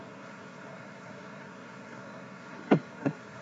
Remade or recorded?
remade